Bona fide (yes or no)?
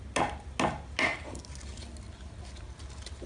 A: yes